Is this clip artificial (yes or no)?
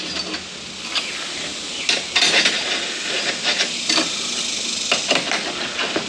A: no